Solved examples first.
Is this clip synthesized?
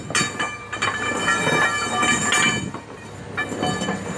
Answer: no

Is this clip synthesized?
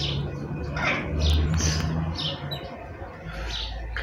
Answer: no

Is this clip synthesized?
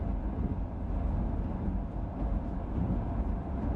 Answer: no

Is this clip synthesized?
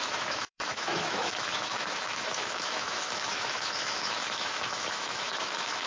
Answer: yes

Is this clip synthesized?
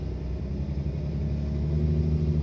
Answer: no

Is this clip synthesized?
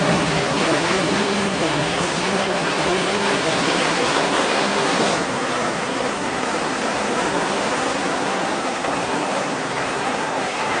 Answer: yes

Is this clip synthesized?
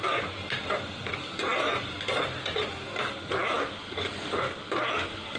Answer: no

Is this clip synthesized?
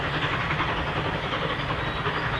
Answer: no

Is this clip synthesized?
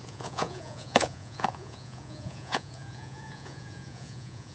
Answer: yes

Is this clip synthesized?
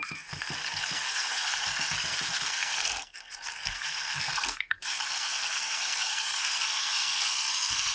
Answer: yes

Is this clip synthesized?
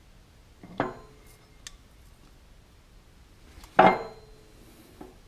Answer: no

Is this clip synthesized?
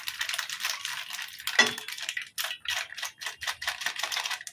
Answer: no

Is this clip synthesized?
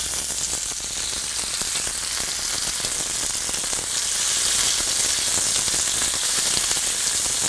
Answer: no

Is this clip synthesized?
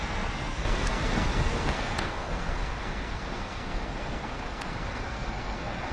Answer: yes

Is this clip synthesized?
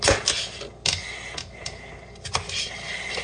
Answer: no